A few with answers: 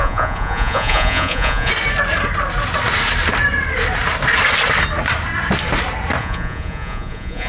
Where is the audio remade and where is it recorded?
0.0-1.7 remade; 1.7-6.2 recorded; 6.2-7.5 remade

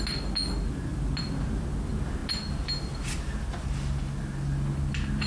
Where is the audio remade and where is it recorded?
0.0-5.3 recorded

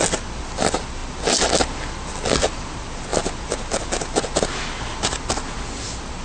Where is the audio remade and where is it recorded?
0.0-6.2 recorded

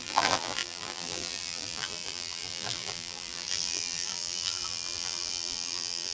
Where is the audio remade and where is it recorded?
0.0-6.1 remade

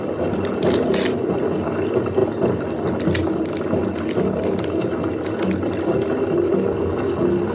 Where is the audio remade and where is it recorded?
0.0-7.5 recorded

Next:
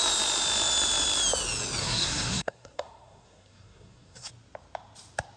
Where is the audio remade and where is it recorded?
0.0-1.8 recorded; 1.8-4.3 remade; 4.3-5.4 recorded

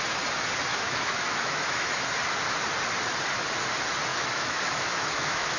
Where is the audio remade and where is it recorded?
0.0-0.7 recorded; 0.7-2.0 remade; 2.0-4.1 recorded; 4.1-5.6 remade

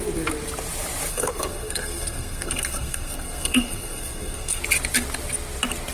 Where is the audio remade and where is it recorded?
0.0-1.1 recorded; 1.1-4.6 remade; 4.6-5.9 recorded